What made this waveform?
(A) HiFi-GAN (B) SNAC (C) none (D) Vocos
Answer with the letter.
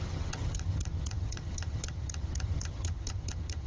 A